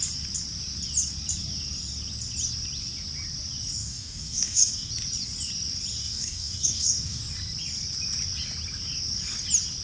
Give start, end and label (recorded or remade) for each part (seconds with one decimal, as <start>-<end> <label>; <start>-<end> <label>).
0.0-3.8 recorded; 3.8-4.9 remade; 4.9-6.0 recorded; 6.0-7.2 remade; 7.2-9.8 recorded